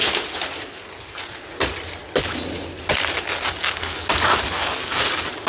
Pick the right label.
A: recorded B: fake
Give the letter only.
A